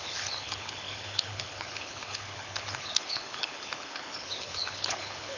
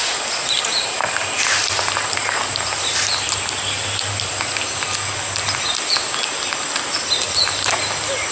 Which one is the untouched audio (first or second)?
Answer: second